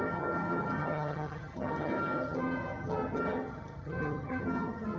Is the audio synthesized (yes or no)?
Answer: yes